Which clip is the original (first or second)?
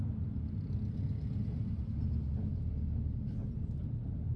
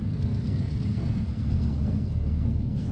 first